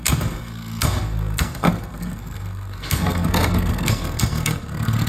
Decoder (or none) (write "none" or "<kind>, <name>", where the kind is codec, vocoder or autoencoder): codec, SNAC